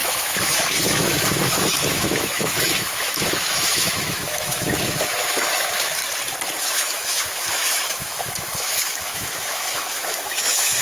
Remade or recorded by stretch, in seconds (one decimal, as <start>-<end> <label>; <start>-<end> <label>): 0.0-6.0 remade; 6.0-6.6 recorded; 6.6-10.8 remade